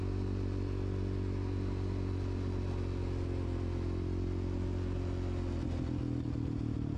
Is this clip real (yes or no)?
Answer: yes